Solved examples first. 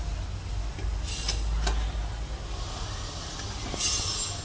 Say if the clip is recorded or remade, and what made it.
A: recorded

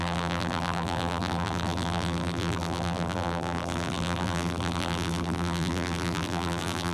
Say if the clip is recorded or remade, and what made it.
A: remade, vocoder, BigVGAN v2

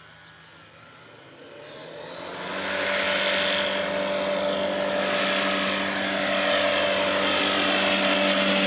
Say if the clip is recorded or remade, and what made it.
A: recorded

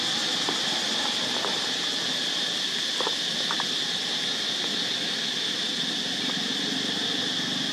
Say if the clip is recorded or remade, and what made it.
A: recorded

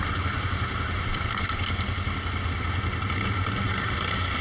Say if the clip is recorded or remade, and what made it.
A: remade, vocoder, BigVGAN v2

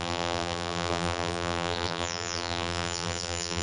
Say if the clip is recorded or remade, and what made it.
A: remade, vocoder, BigVGAN v2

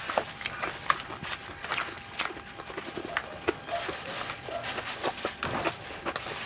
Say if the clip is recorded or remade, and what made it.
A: recorded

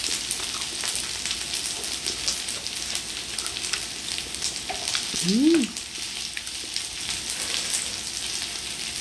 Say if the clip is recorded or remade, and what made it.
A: recorded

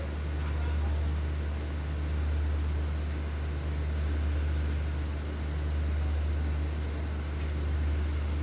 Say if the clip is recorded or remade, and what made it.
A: recorded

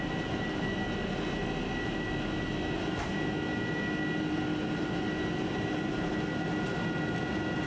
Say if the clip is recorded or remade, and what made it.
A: recorded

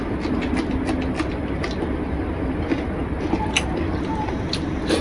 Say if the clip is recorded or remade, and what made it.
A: recorded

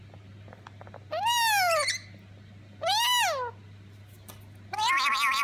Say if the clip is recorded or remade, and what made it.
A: recorded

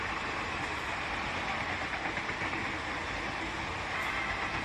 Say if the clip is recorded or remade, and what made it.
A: recorded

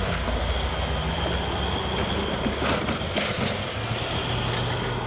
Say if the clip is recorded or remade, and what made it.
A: recorded